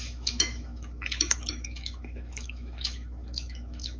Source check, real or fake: fake